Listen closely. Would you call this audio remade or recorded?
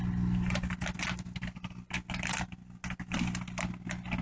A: recorded